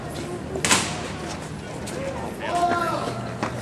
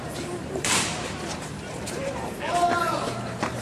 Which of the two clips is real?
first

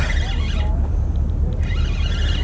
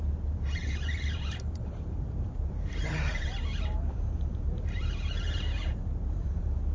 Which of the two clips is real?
first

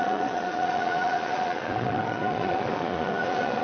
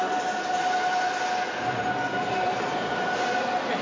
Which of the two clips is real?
second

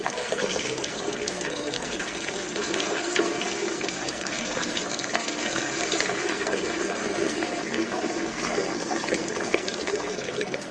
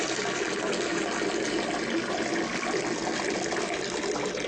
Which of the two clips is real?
second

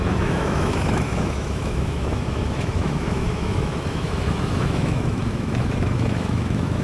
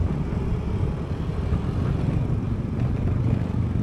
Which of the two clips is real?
second